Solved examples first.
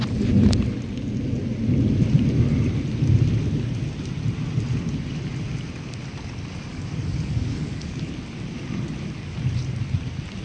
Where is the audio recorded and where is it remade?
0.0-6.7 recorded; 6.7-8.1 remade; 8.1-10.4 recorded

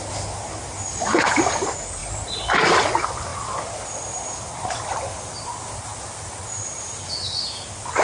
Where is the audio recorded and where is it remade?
0.0-8.0 recorded